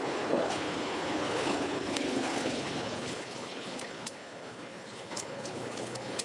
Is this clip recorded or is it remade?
remade